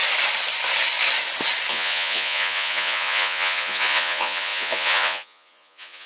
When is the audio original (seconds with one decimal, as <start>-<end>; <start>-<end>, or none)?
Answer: 0.0-1.7

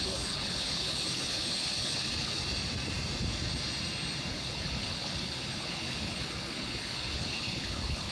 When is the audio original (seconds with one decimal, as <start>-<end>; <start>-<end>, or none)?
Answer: 2.4-4.3

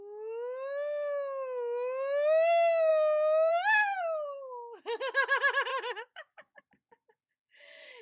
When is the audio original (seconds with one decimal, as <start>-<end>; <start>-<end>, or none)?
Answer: 0.0-5.7; 6.6-8.0

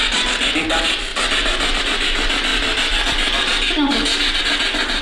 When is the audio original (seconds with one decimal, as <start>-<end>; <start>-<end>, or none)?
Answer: 0.0-5.0

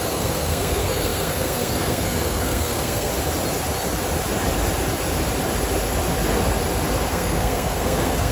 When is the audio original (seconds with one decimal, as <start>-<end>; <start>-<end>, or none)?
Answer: 3.1-7.1

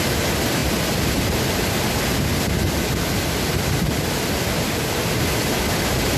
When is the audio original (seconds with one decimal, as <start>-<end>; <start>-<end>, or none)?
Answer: 0.0-6.2

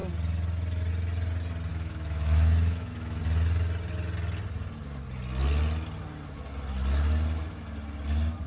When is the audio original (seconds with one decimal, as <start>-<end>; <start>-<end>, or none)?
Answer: 0.0-1.7; 3.2-8.5